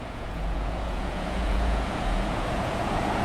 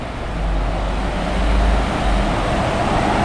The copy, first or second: first